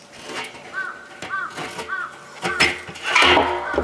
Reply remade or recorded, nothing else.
recorded